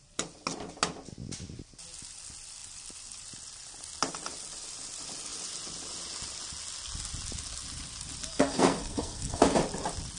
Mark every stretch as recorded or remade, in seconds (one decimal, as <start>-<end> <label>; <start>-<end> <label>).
0.0-8.3 recorded; 8.3-9.6 remade; 9.6-10.2 recorded